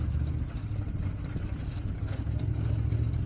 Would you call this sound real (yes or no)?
yes